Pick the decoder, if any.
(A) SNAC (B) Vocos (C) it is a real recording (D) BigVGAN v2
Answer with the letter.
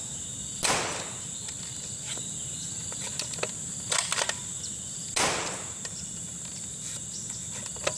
C